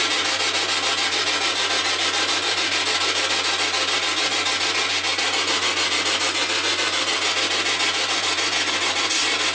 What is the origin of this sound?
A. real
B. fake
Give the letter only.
A